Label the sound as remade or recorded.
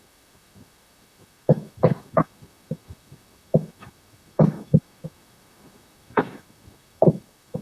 remade